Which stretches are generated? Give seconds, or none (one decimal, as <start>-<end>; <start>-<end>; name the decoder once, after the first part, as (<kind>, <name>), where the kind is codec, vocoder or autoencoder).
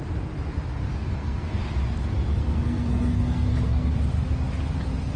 1.0-1.6 (codec, SNAC); 2.4-3.9